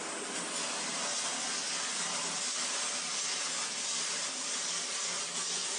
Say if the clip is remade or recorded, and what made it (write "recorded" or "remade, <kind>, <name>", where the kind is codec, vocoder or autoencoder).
recorded